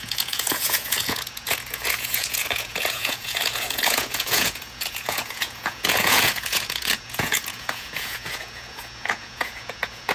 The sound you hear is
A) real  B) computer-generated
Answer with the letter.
B